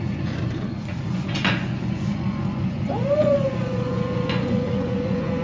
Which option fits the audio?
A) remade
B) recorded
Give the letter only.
A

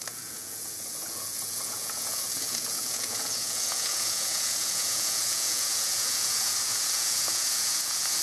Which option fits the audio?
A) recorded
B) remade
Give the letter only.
B